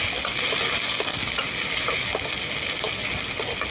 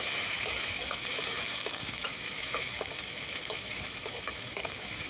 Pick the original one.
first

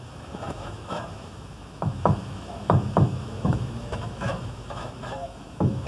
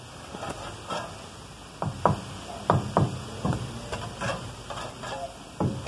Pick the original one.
second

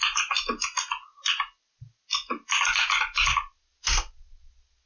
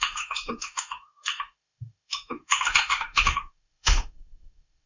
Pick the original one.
first